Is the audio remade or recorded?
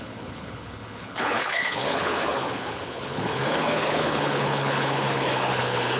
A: remade